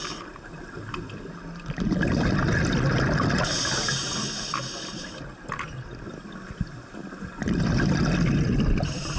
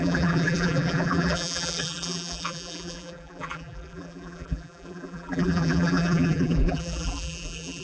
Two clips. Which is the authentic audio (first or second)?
first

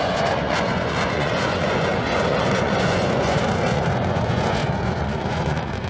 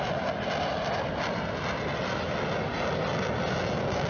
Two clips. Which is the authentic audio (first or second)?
second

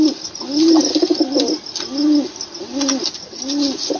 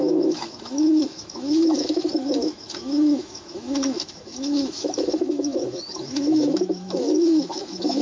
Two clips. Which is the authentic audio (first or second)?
first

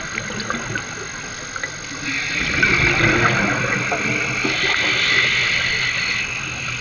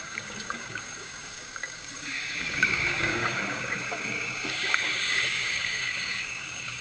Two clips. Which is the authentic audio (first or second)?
first